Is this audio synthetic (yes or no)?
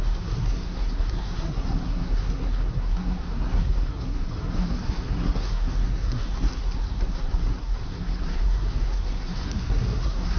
yes